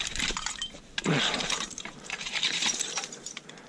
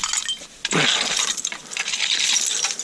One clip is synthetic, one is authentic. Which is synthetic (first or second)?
first